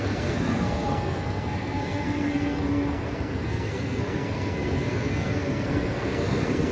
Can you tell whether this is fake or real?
fake